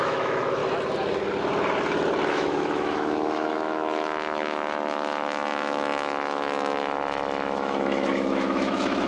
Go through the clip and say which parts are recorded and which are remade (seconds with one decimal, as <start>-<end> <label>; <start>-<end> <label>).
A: 0.0-0.6 remade; 0.6-2.3 recorded; 2.3-9.1 remade